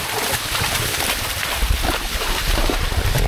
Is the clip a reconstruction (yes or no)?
no